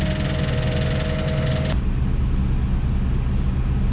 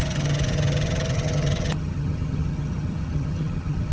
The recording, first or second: first